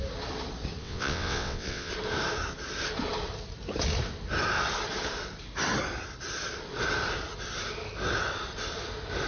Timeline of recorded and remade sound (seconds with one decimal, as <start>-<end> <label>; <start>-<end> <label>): 0.0-0.8 recorded; 0.8-1.9 remade; 1.9-9.3 recorded